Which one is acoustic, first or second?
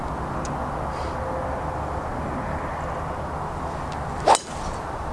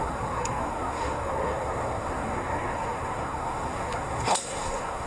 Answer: first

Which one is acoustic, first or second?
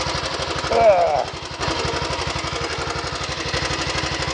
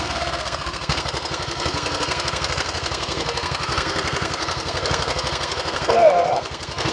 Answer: first